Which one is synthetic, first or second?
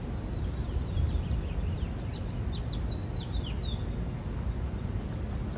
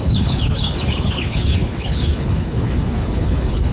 second